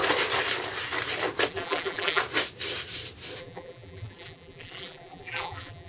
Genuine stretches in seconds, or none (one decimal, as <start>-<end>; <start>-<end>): 0.0-1.5; 2.2-3.4